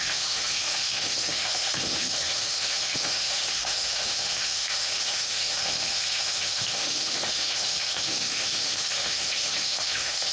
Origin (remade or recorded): remade